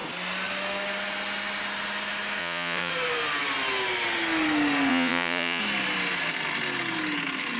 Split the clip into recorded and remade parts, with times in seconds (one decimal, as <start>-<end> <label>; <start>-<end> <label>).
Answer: 0.0-2.4 recorded; 2.4-2.9 remade; 2.9-4.9 recorded; 4.9-5.6 remade; 5.6-7.6 recorded